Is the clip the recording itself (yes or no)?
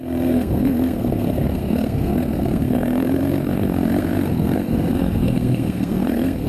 no